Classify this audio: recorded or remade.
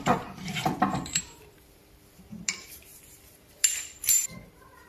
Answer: remade